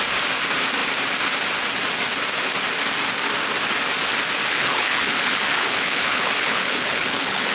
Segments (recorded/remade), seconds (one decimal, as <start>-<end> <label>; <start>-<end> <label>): 0.0-4.5 recorded; 4.5-7.5 remade